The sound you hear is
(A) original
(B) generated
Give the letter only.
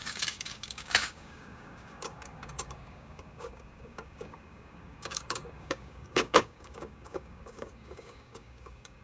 B